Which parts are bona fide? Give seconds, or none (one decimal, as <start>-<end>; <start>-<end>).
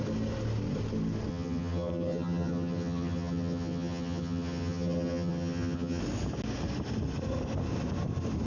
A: 0.0-1.3; 6.0-8.5